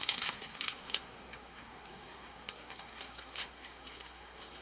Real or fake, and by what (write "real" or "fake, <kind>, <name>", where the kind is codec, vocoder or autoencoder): fake, codec, SNAC